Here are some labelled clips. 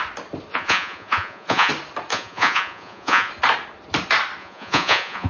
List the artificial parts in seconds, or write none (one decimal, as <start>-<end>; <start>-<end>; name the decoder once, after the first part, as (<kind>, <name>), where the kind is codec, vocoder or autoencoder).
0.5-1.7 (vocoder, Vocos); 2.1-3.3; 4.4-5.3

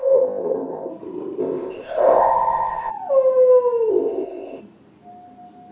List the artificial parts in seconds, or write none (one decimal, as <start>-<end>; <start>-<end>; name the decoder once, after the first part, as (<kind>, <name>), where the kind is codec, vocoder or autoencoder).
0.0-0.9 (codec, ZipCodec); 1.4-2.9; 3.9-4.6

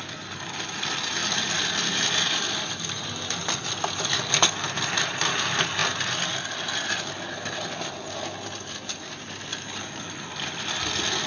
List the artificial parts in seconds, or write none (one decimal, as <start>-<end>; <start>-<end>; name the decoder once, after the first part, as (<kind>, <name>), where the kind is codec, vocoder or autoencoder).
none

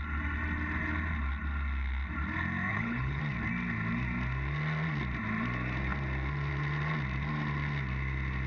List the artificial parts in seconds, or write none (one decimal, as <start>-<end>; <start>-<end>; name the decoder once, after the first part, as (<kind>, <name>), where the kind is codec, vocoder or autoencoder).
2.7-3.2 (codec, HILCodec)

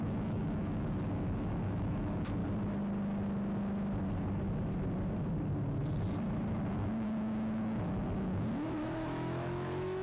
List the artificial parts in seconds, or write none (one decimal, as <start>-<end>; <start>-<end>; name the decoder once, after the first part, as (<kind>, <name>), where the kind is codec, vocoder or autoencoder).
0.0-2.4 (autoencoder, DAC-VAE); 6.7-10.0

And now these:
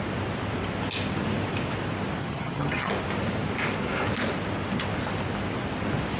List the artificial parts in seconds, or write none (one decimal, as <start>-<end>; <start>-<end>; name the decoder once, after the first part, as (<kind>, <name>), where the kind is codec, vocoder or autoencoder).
2.2-2.9 (vocoder, HiFi-GAN)